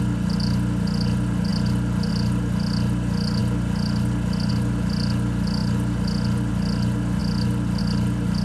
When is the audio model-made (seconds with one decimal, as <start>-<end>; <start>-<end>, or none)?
none